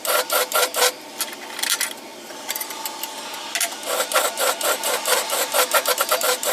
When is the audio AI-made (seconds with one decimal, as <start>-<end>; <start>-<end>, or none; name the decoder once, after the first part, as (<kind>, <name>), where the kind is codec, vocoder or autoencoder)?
none